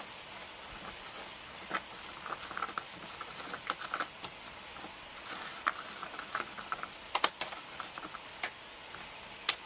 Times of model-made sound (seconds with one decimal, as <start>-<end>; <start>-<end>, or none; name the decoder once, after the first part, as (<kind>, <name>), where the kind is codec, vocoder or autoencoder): none